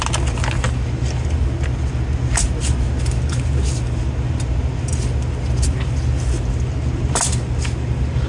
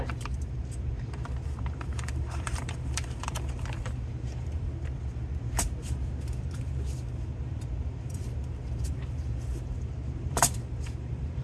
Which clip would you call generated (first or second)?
second